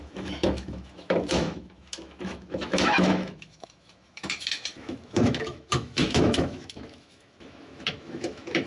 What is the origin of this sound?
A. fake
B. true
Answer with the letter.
A